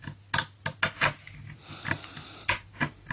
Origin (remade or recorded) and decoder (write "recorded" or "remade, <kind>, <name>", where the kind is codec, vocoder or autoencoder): recorded